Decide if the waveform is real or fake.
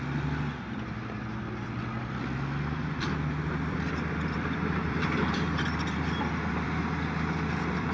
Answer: fake